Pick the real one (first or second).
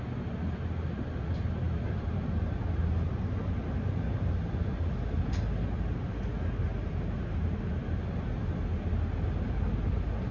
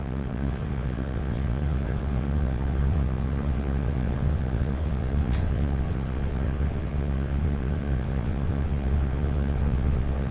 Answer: first